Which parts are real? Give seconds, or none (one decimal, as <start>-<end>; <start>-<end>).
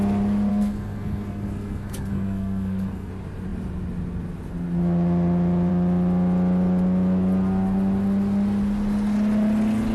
0.0-0.5; 3.1-9.9